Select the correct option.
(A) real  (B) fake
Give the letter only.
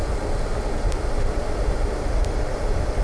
A